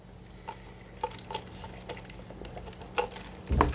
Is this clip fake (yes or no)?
no